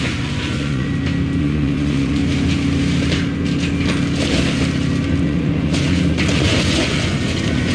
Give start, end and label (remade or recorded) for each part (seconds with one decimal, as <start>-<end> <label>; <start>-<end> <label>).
0.0-0.9 remade; 0.9-1.4 recorded; 1.4-2.2 remade; 2.2-5.2 recorded; 5.2-7.7 remade